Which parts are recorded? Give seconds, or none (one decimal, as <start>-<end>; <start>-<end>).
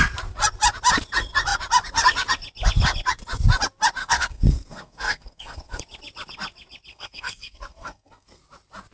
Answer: 0.0-4.0; 5.8-6.9; 8.4-8.9